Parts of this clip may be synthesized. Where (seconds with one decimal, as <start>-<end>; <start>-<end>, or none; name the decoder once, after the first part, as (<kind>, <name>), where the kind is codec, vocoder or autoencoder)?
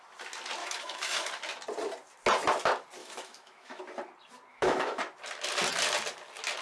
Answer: 0.6-1.3 (autoencoder, DAC-VAE); 3.0-3.8; 4.5-5.0